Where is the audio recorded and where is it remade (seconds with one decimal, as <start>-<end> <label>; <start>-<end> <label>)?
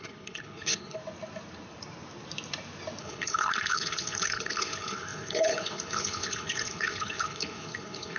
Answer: 0.0-1.0 remade; 1.0-3.0 recorded; 3.0-8.2 remade